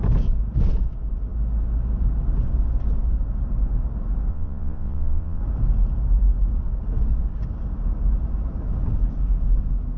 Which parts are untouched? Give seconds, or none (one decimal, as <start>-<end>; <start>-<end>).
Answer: 0.0-4.3; 5.4-10.0